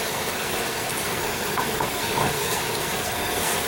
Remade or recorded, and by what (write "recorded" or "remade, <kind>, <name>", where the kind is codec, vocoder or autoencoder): remade, codec, SNAC